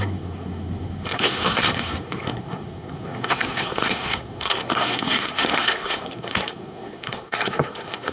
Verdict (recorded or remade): remade